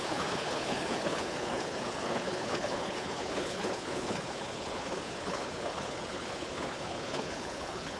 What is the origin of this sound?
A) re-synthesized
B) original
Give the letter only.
A